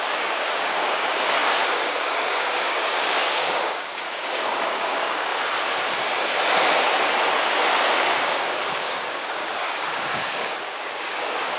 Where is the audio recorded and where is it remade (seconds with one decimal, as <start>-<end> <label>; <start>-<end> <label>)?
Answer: 0.0-5.3 remade; 5.3-7.9 recorded; 7.9-11.6 remade